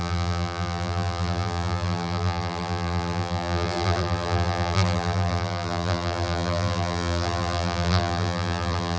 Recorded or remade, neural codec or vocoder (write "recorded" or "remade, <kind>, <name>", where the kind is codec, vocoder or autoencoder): remade, vocoder, BigVGAN v2